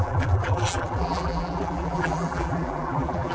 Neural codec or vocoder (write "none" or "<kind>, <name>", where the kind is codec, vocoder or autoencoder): vocoder, BigVGAN v2